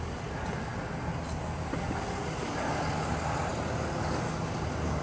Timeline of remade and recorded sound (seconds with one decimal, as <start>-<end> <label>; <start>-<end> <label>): 0.0-5.0 recorded